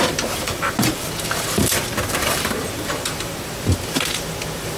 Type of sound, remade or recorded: remade